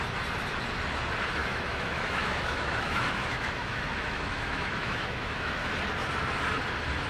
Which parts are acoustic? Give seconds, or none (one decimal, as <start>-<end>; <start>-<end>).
0.0-1.4; 5.7-7.1